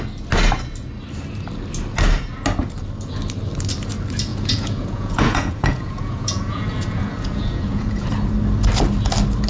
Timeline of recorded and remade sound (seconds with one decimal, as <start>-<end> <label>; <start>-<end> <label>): 0.0-4.3 recorded; 4.3-8.1 remade; 8.1-9.5 recorded